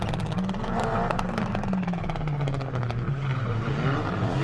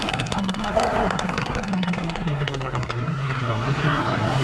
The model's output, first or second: second